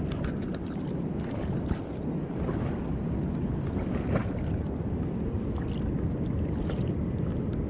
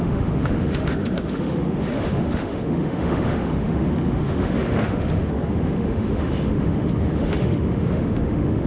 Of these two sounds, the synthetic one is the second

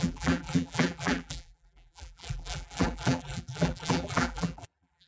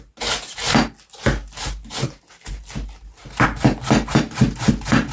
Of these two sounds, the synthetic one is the first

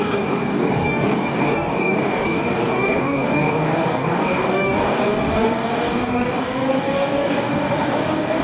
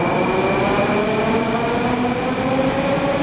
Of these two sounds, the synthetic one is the first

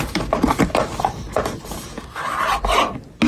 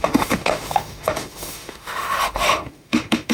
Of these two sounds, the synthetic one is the second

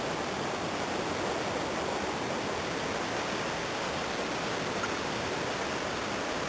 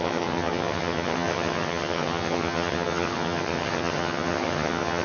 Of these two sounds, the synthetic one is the second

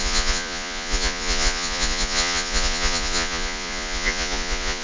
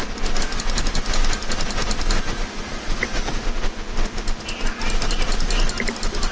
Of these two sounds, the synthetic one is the first